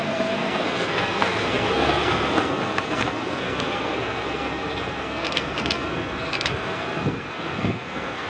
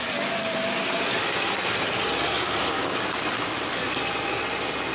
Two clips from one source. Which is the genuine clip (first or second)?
second